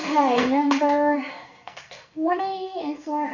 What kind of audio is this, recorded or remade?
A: remade